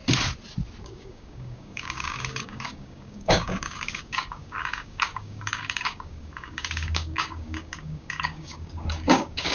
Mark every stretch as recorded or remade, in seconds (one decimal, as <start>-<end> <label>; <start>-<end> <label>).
0.0-0.8 recorded; 0.8-9.5 remade